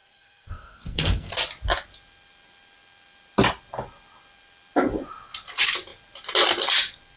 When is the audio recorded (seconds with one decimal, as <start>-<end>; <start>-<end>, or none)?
1.3-7.2